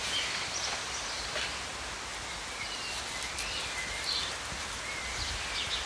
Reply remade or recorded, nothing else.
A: recorded